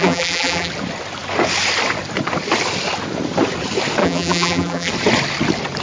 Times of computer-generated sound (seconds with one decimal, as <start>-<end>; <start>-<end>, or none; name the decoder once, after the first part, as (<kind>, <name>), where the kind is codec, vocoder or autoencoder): 0.0-0.7 (vocoder, BigVGAN v2); 4.0-4.9